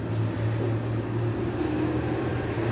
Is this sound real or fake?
real